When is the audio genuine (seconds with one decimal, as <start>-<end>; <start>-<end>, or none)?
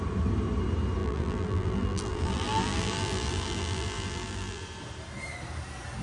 0.0-1.0; 4.6-6.0